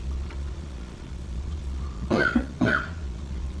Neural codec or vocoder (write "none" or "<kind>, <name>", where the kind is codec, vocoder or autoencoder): vocoder, Vocos